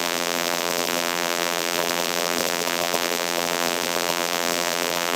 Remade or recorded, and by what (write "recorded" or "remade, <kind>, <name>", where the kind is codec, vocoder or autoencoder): remade, vocoder, BigVGAN v2